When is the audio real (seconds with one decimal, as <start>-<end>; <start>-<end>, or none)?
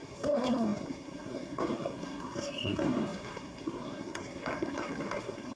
none